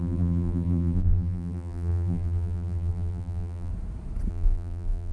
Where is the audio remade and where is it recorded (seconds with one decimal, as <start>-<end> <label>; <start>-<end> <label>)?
0.0-3.7 remade; 3.7-4.3 recorded; 4.3-5.1 remade